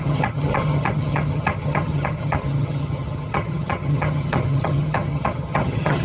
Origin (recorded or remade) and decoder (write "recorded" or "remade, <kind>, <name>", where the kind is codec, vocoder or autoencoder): remade, vocoder, HiFi-GAN